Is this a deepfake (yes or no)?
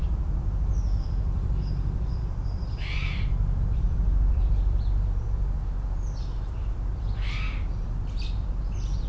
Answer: yes